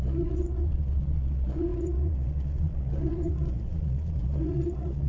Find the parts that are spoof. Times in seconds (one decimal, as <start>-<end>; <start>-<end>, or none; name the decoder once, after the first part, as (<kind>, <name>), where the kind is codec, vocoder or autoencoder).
0.0-5.1 (vocoder, Vocos)